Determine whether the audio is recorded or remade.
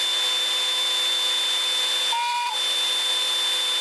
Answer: recorded